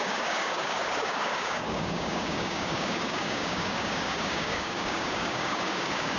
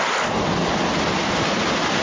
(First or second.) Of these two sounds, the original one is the second